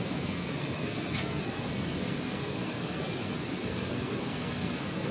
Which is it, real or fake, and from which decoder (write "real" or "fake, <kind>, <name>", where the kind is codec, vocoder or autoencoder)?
fake, codec, SNAC